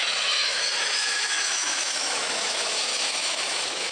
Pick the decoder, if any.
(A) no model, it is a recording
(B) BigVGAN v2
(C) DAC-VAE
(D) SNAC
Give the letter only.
C